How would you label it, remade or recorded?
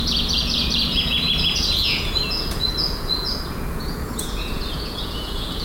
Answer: remade